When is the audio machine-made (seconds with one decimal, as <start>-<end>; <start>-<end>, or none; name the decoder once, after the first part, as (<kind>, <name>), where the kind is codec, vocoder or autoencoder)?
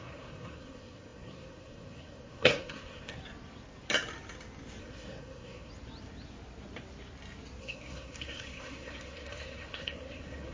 0.0-3.2 (codec, SNAC); 4.8-5.7; 7.6-10.5